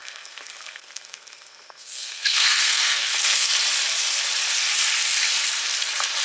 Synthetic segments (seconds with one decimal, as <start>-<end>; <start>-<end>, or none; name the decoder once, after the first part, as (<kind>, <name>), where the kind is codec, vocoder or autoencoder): 0.0-3.5 (codec, SNAC)